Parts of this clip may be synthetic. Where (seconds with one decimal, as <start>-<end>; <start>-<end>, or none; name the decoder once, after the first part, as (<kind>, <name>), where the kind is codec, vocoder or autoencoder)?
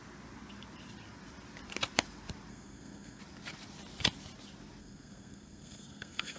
2.5-3.2 (codec, SNAC); 4.8-6.4